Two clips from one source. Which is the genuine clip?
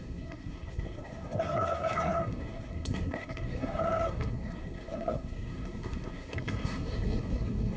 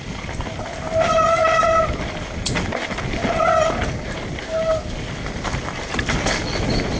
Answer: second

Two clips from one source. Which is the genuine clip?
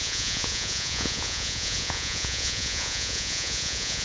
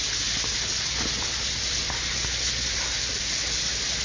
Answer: second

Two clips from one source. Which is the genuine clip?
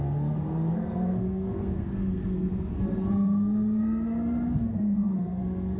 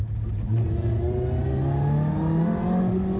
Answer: second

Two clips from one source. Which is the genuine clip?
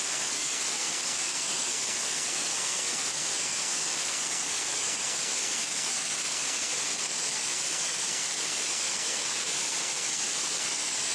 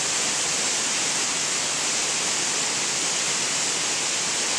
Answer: second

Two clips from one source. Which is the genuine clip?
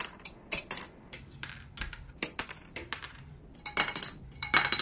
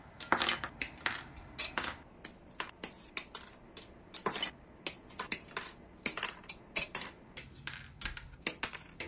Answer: second